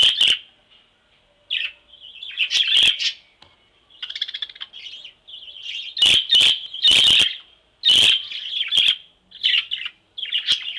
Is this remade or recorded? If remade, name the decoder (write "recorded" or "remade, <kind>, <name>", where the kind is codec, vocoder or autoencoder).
recorded